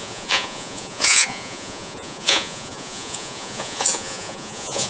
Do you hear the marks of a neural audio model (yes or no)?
yes